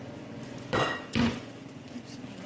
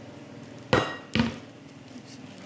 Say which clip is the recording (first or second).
second